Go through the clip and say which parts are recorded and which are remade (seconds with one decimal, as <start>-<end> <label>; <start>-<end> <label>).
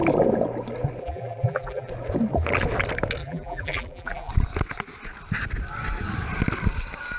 0.0-1.0 recorded; 1.0-1.9 remade; 1.9-3.2 recorded; 3.2-4.3 remade; 4.3-7.2 recorded